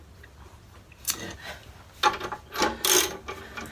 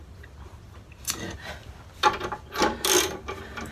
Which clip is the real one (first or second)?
first